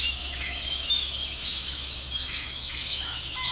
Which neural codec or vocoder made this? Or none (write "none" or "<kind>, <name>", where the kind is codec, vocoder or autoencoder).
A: autoencoder, DAC-VAE